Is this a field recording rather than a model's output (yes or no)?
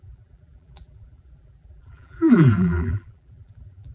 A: no